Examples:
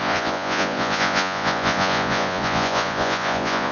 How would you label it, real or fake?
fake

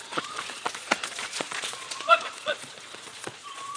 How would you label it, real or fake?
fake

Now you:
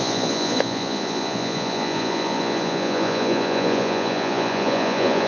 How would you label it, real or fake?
fake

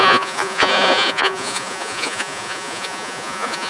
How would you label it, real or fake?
fake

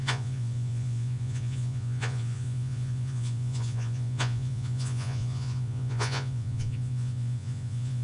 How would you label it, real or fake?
fake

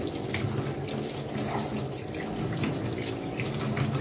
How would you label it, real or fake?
real